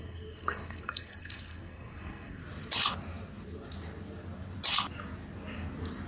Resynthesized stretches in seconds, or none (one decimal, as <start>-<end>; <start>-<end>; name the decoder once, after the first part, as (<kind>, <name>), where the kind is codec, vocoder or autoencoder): 0.0-2.4 (codec, SNAC)